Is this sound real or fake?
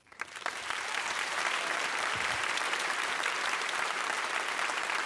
fake